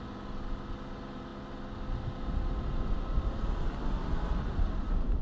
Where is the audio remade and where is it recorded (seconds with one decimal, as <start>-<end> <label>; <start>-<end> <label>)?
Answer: 0.0-5.2 recorded